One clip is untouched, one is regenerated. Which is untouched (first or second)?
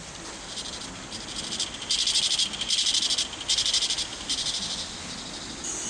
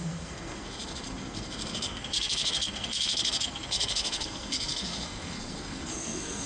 first